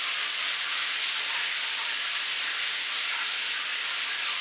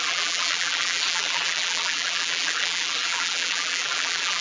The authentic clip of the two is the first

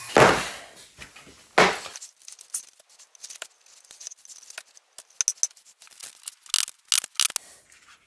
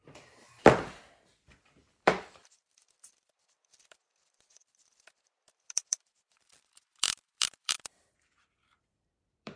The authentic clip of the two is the first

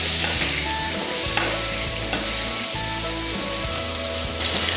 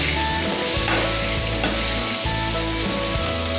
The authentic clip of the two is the second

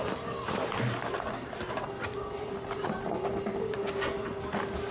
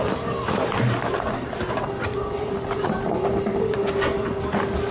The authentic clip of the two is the first